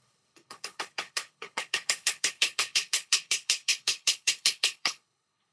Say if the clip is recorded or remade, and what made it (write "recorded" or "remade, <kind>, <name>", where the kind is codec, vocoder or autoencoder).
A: remade, codec, HILCodec